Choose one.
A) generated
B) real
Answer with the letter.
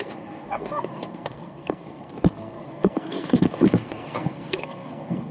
A